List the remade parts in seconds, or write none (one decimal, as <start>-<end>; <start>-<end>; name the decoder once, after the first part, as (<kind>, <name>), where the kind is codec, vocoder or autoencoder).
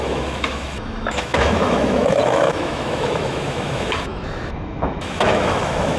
0.0-6.0 (autoencoder, DAC-VAE)